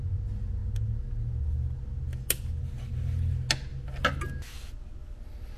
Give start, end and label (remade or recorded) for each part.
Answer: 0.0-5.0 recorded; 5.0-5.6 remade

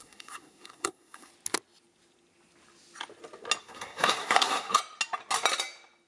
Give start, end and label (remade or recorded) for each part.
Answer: 0.0-1.3 remade; 1.3-3.6 recorded; 3.6-4.8 remade; 4.8-6.1 recorded

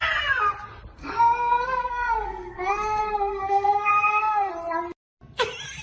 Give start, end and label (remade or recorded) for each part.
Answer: 0.0-1.0 recorded; 1.0-4.5 remade; 4.5-5.8 recorded

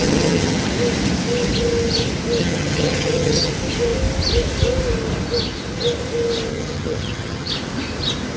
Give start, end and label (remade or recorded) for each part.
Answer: 0.0-0.7 remade; 0.7-2.4 recorded; 2.4-3.5 remade; 3.5-6.5 recorded; 6.5-7.5 remade; 7.5-8.4 recorded

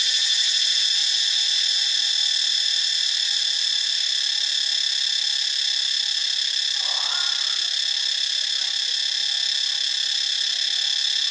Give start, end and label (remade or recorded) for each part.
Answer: 0.0-2.5 recorded; 2.5-4.1 remade; 4.1-11.3 recorded